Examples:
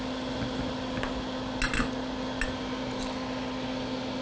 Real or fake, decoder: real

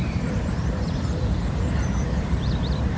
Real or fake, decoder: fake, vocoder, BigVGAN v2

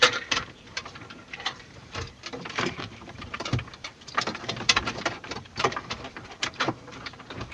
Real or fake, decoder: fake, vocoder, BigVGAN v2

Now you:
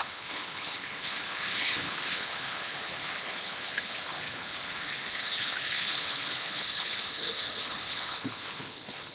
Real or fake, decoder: fake, codec, HILCodec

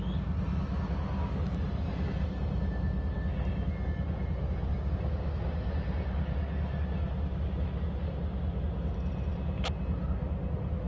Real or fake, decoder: real